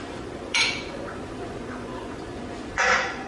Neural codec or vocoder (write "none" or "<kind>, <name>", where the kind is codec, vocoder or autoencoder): vocoder, Vocos